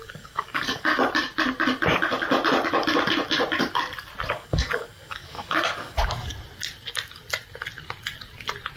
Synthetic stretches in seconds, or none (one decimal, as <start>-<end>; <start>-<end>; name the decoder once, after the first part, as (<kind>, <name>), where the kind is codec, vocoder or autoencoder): 0.0-0.9 (codec, DAC); 4.3-6.3

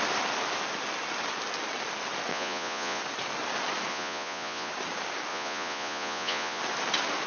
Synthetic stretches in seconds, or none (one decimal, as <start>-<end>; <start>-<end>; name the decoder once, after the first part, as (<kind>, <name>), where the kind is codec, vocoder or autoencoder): 2.3-3.0 (vocoder, Vocos); 3.9-4.7; 5.3-6.6

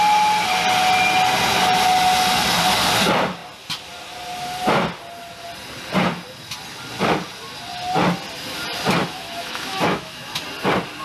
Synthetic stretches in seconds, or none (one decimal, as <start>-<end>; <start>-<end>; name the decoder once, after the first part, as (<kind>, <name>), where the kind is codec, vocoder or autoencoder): 9.0-10.4 (autoencoder, DAC-VAE)

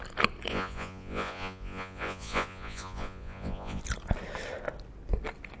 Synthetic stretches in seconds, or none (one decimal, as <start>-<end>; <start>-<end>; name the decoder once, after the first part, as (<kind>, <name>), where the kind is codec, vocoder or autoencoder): 0.5-3.8 (vocoder, Vocos)

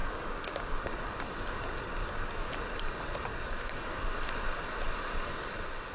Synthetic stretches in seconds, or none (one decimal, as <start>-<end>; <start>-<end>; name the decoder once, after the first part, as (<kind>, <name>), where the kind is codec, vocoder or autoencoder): 0.0-0.8 (codec, DAC); 2.0-2.5; 3.3-4.0

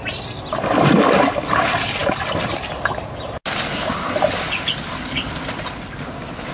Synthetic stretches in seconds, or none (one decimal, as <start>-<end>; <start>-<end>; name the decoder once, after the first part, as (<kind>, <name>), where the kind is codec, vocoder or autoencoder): none